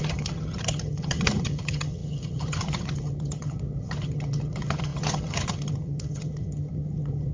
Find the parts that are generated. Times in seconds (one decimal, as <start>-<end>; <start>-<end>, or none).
0.0-7.3